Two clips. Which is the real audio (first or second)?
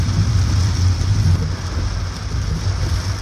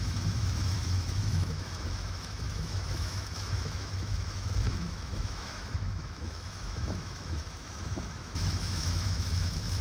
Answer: first